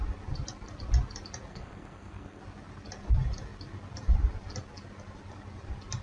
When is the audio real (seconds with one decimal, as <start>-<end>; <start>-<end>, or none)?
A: 0.0-1.5; 2.4-6.0